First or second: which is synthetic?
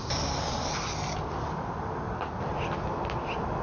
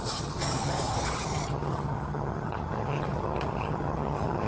second